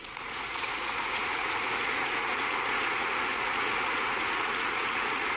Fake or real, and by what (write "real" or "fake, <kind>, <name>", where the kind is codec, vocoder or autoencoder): fake, vocoder, Vocos